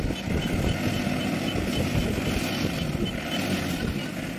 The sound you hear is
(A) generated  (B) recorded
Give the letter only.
B